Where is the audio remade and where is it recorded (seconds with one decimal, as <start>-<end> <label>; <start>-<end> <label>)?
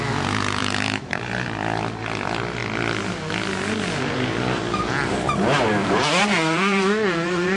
0.0-0.6 recorded; 0.6-1.2 remade; 1.2-5.8 recorded; 5.8-7.6 remade